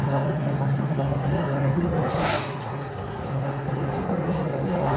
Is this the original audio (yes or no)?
no